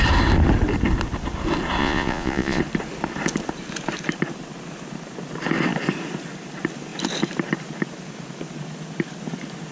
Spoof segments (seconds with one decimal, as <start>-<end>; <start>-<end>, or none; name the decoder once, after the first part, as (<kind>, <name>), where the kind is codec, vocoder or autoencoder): 1.8-2.6 (vocoder, Vocos)